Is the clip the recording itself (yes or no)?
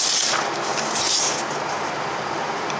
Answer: yes